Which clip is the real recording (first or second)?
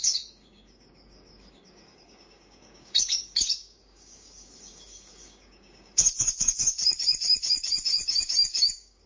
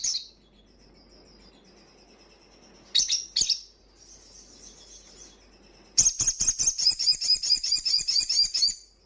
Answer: second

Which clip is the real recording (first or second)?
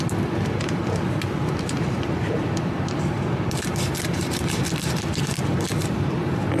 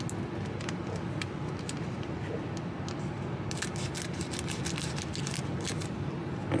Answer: second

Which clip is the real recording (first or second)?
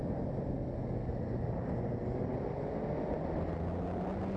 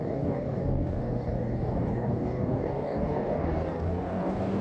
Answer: first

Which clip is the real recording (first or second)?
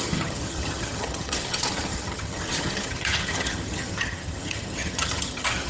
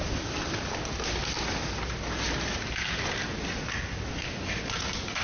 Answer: second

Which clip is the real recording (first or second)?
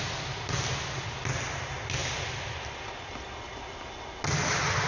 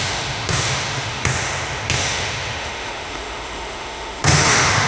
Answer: first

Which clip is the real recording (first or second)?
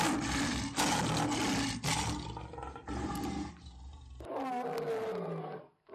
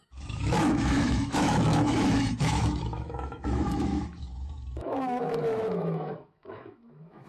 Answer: first